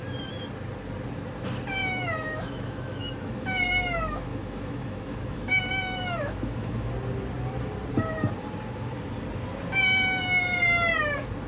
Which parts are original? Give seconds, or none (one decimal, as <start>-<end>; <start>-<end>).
0.0-1.8; 6.9-11.5